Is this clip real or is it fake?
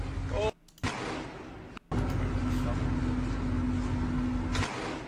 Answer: real